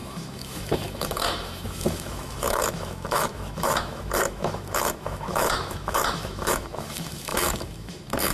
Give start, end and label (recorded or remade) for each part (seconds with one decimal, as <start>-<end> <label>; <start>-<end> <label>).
0.0-8.3 remade